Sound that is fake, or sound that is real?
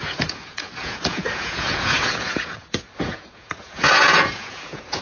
fake